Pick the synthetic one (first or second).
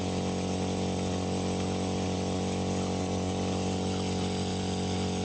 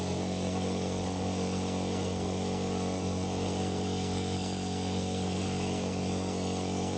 second